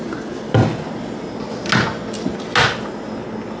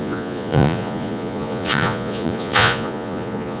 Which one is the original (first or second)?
first